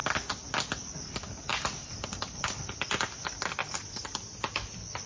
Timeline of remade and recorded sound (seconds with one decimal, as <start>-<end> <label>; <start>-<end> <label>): 0.0-1.5 recorded; 1.5-3.2 remade; 3.2-3.6 recorded; 3.6-4.5 remade; 4.5-5.1 recorded